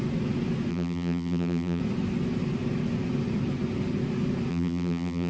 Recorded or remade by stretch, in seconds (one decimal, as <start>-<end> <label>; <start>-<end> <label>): 0.0-0.7 recorded; 0.7-1.8 remade; 1.8-4.5 recorded; 4.5-5.3 remade